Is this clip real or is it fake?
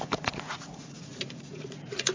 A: fake